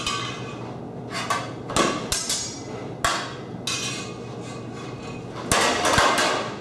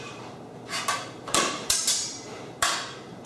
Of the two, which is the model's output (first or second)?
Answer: second